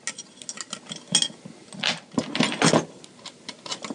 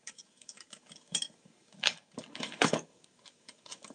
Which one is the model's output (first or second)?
second